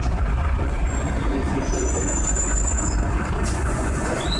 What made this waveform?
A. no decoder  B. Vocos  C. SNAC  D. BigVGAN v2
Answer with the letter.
B